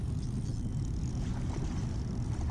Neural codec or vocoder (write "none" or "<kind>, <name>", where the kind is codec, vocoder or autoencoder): none